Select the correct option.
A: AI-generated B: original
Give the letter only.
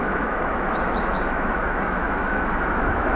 A